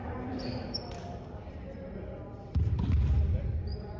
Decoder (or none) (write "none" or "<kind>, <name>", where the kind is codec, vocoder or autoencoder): vocoder, BigVGAN v2